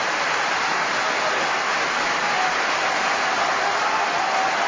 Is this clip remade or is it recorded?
recorded